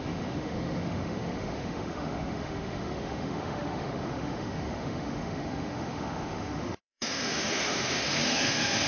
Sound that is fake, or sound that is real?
fake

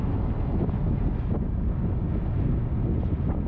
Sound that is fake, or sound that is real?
real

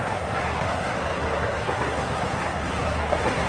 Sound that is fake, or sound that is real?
fake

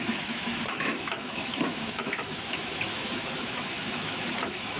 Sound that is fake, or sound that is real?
fake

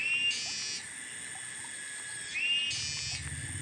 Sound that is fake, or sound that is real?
real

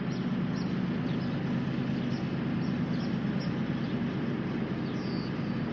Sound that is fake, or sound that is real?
real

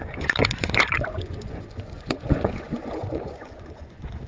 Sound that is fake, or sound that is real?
fake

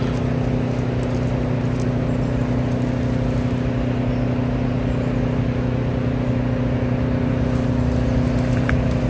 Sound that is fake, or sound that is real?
real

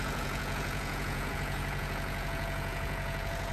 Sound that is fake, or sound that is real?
fake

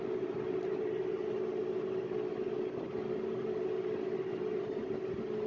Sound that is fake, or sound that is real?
real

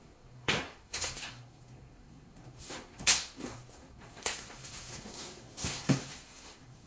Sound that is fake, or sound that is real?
fake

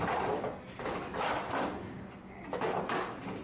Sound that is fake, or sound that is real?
real